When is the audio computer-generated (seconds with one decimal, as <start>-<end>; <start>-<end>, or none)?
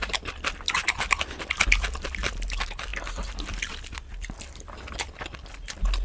none